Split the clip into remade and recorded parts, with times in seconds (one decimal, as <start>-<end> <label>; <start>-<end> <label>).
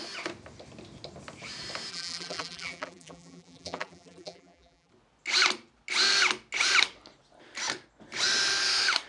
0.0-1.9 recorded; 1.9-4.9 remade; 4.9-9.1 recorded